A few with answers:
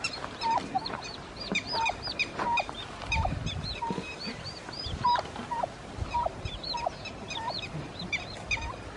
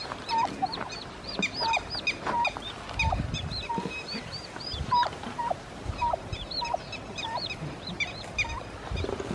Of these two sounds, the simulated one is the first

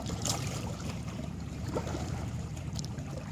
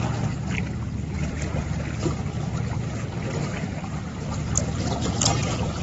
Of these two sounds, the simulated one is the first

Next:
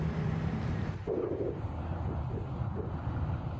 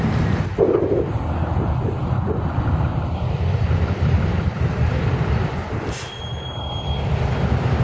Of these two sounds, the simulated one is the second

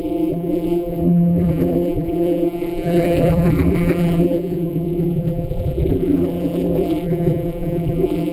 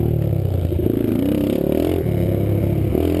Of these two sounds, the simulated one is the first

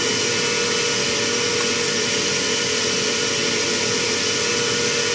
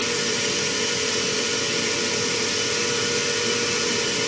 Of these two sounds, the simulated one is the second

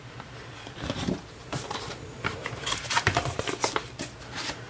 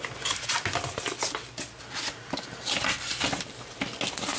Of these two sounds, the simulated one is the first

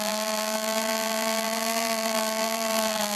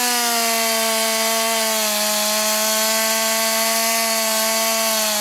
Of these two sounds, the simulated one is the first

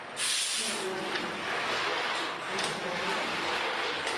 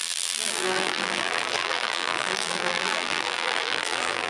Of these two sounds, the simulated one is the second